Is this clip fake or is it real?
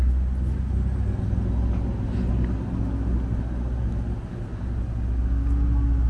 real